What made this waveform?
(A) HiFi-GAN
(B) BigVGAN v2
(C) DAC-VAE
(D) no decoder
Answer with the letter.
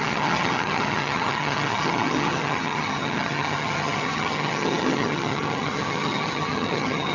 A